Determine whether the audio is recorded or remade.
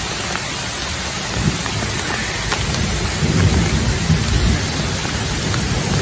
recorded